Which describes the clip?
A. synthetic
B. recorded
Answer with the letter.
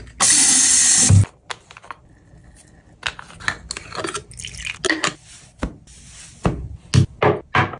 B